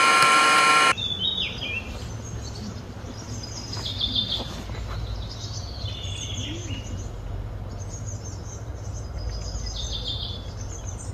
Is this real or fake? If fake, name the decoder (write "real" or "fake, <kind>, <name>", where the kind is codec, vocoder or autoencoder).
real